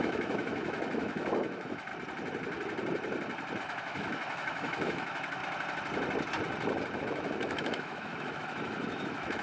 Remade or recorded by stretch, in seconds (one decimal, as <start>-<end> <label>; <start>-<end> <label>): 0.0-1.9 remade; 1.9-3.6 recorded; 3.6-5.4 remade; 5.4-7.0 recorded; 7.0-9.4 remade